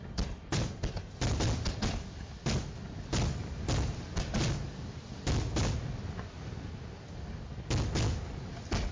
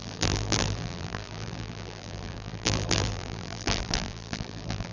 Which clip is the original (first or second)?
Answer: first